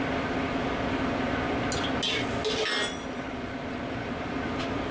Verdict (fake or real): real